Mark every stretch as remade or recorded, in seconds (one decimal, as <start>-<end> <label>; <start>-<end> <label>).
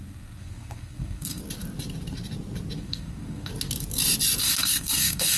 0.0-1.4 remade; 1.4-2.8 recorded; 2.8-3.5 remade; 3.5-4.4 recorded; 4.4-5.4 remade